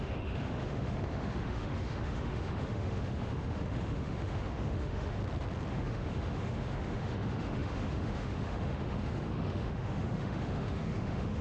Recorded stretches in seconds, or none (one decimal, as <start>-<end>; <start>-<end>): 5.2-5.7